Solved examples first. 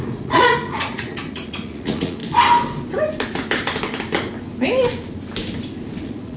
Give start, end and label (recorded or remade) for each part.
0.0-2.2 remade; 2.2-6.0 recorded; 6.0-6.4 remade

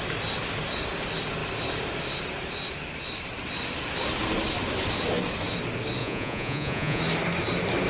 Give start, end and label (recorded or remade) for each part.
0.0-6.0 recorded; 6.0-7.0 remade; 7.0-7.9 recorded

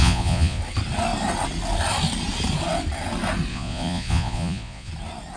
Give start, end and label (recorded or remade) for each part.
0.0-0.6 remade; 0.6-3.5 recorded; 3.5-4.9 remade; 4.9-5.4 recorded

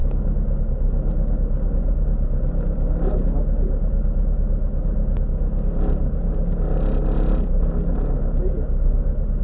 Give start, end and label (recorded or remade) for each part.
0.0-9.4 recorded

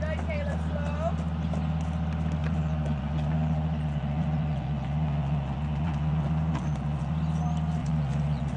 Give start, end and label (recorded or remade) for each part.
0.0-2.4 recorded; 2.4-7.1 remade; 7.1-7.8 recorded; 7.8-8.6 remade

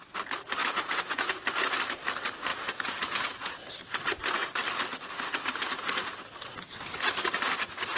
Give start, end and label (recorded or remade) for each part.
0.0-0.6 recorded; 0.6-1.3 remade; 1.3-2.5 recorded; 2.5-3.6 remade; 3.6-8.0 recorded

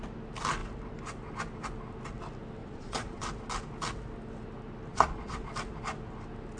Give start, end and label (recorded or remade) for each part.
0.0-2.6 recorded; 2.6-3.2 remade; 3.2-4.9 recorded; 4.9-5.5 remade; 5.5-6.6 recorded

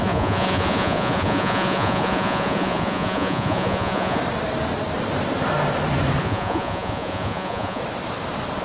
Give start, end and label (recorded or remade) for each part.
0.0-4.2 remade; 4.2-6.2 recorded; 6.2-7.8 remade; 7.8-8.6 recorded